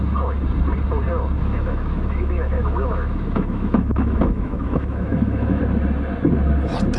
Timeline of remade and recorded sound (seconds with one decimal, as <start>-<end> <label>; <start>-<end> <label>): 0.0-1.4 recorded; 1.4-5.6 remade; 5.6-7.0 recorded